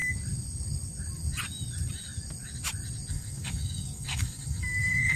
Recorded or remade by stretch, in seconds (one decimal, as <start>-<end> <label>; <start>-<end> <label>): 0.0-3.1 recorded; 3.1-5.2 remade